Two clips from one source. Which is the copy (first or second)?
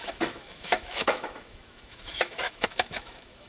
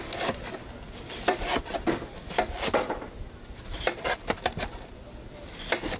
first